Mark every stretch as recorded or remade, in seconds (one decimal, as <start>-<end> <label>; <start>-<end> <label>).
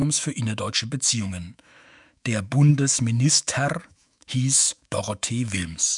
0.0-6.0 remade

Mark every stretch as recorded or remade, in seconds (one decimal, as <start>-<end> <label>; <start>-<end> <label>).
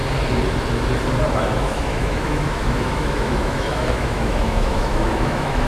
0.0-1.4 recorded; 1.4-5.7 remade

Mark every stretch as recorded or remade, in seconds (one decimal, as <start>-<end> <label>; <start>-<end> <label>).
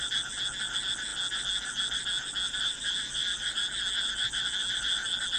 0.0-5.4 recorded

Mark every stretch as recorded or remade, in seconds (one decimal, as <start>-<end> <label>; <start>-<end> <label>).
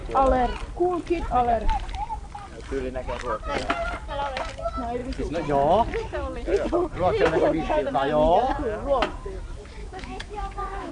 0.0-9.8 recorded; 9.8-10.9 remade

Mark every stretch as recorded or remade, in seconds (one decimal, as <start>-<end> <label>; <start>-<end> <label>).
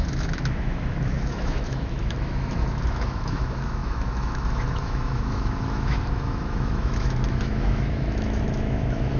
0.0-9.2 remade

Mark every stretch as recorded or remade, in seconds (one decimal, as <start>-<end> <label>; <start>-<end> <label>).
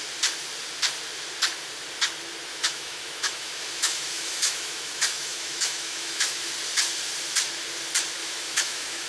0.0-2.5 recorded; 2.5-6.5 remade; 6.5-8.2 recorded; 8.2-9.1 remade